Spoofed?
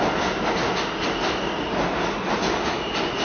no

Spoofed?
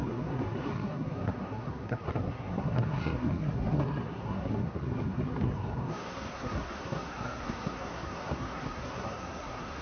yes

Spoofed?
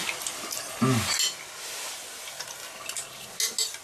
no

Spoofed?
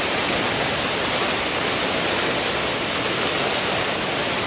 no